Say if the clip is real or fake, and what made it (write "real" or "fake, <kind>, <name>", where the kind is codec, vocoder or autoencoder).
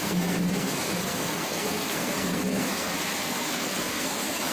fake, codec, SNAC